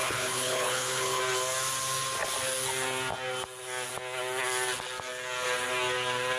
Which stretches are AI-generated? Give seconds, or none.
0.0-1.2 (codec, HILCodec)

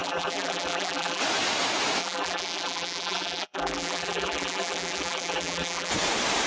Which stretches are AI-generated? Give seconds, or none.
0.0-1.2 (vocoder, BigVGAN v2); 2.0-5.9

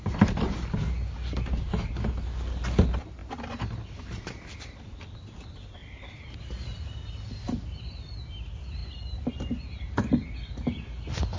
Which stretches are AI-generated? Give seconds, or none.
none

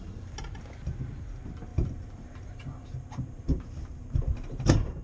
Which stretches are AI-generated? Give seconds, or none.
1.7-5.0 (vocoder, BigVGAN v2)

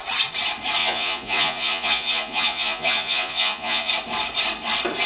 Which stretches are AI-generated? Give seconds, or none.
0.8-3.9 (vocoder, Vocos)

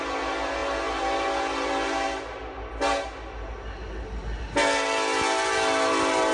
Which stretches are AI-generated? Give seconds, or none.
none